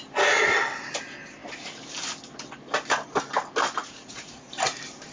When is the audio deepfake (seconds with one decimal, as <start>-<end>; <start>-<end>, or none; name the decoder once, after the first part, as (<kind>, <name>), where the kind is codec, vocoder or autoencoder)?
3.8-4.5 (vocoder, Vocos)